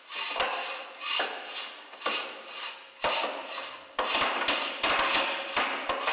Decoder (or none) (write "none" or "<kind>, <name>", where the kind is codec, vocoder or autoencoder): none